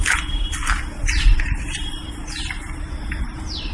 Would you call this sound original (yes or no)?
yes